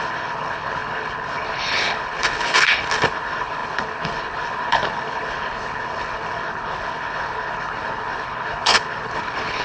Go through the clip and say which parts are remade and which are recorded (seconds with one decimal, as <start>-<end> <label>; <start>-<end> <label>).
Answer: 0.0-9.6 remade